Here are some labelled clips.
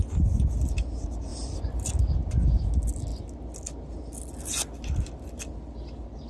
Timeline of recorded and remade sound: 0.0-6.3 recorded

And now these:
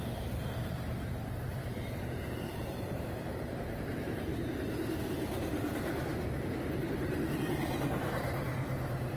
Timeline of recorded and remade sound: 0.0-4.3 remade; 4.3-7.5 recorded; 7.5-9.2 remade

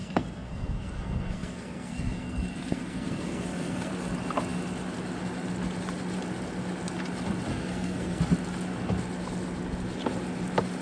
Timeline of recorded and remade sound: 0.0-3.9 remade; 3.9-7.5 recorded; 7.5-8.2 remade; 8.2-10.8 recorded

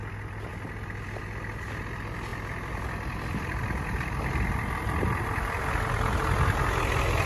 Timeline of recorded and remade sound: 0.0-7.3 recorded

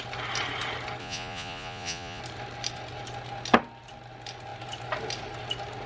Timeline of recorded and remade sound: 0.0-1.0 recorded; 1.0-2.2 remade; 2.2-5.9 recorded

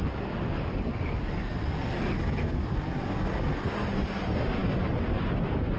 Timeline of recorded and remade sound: 0.0-5.8 recorded

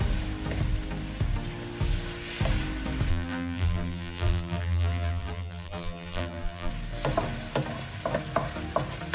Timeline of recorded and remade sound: 0.0-3.1 recorded; 3.1-6.7 remade; 6.7-9.1 recorded